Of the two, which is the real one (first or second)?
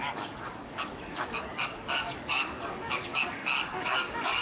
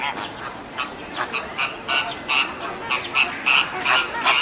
second